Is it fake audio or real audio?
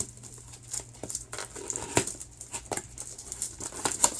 real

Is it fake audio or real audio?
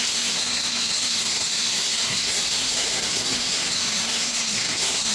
fake